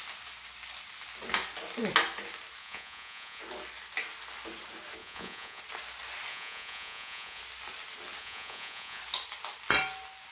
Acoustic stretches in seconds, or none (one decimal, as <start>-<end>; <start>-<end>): 0.0-2.6; 3.4-5.0; 5.6-6.3; 7.4-8.2; 9.0-10.3